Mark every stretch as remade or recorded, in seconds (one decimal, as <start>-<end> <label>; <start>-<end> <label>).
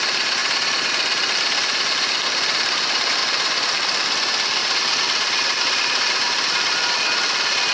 0.0-3.2 recorded; 3.2-3.8 remade; 3.8-4.6 recorded; 4.6-6.1 remade; 6.1-7.7 recorded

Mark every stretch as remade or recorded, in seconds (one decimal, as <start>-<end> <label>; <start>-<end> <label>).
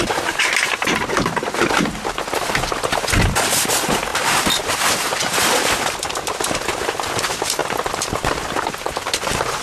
0.0-4.1 recorded; 4.1-6.7 remade; 6.7-7.6 recorded; 7.6-9.0 remade; 9.0-9.6 recorded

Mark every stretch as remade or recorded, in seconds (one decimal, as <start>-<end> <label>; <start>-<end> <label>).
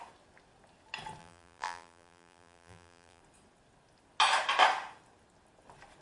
0.0-1.2 recorded; 1.2-3.2 remade; 3.2-6.0 recorded